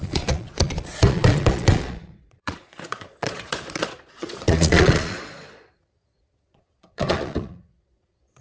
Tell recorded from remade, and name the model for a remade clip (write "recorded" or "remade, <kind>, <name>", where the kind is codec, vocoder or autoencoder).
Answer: remade, vocoder, Vocos